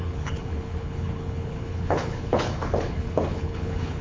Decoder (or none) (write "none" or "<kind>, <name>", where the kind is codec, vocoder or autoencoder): codec, HILCodec